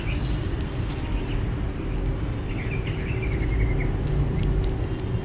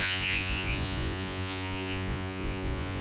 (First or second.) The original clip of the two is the first